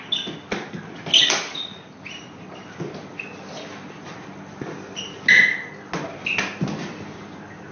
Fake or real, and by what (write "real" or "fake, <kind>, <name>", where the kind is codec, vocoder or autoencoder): real